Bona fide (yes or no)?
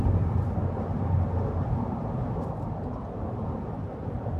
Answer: yes